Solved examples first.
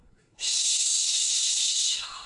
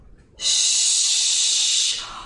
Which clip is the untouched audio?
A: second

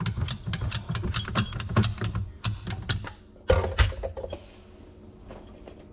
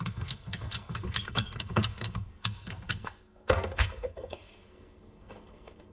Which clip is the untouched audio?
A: first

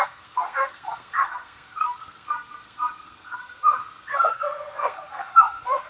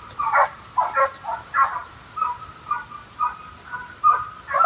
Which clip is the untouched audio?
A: second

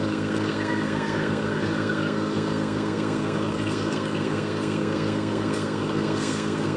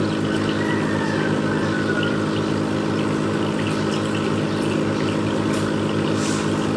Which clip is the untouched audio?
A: second